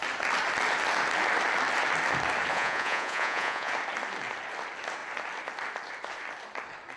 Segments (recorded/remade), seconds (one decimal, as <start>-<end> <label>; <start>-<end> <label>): 0.0-2.5 recorded; 2.5-3.7 remade; 3.7-7.0 recorded